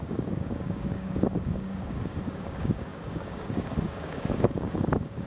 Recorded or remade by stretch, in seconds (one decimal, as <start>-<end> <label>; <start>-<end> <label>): 0.0-5.3 remade